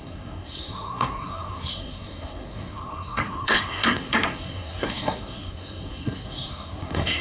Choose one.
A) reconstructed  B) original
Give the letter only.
A